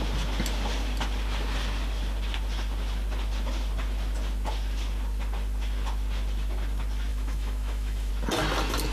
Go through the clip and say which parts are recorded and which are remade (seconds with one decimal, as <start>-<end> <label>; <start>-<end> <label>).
0.0-7.1 recorded; 7.1-8.1 remade; 8.1-8.9 recorded